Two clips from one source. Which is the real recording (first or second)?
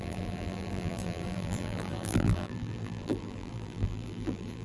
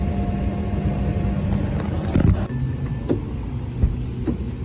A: second